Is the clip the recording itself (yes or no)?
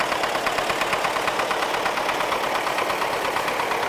yes